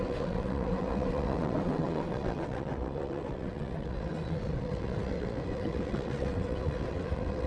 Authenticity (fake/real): fake